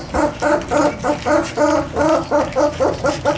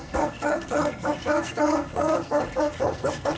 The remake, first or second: second